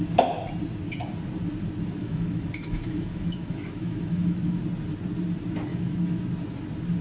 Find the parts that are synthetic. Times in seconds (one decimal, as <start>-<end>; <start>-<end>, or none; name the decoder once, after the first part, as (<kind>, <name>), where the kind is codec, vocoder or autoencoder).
2.0-4.6 (autoencoder, DAC-VAE); 5.7-6.2